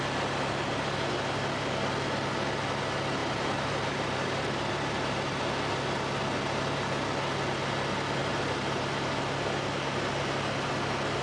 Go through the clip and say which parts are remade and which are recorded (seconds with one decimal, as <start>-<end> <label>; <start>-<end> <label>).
0.0-3.2 recorded; 3.2-5.4 remade; 5.4-8.2 recorded; 8.2-9.1 remade; 9.1-11.2 recorded